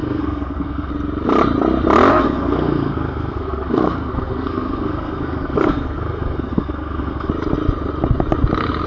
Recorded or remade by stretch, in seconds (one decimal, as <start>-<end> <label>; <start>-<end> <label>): 0.0-0.9 remade; 0.9-2.1 recorded; 2.1-7.3 remade; 7.3-8.9 recorded